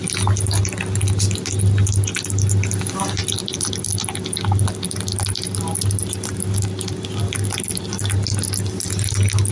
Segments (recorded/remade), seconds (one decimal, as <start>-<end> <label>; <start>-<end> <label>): 0.0-9.5 recorded